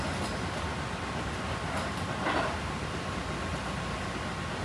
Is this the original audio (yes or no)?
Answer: yes